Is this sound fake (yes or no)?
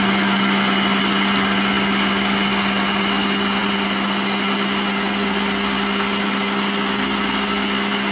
no